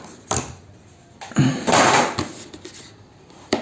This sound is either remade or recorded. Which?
recorded